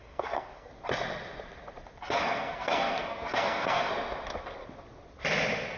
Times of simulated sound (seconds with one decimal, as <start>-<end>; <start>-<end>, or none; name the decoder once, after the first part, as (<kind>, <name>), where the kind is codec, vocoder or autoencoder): 0.0-0.7 (codec, SNAC); 2.0-3.9